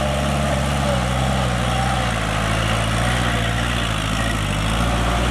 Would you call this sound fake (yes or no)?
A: no